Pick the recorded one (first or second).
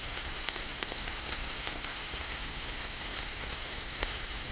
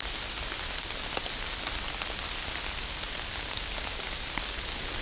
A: second